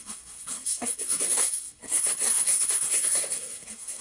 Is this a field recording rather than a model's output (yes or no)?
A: no